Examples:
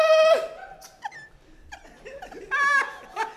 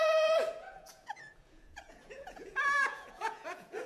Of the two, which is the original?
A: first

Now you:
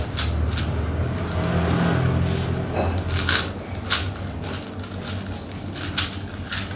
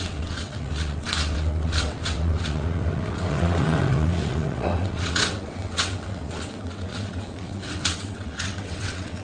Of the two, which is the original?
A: first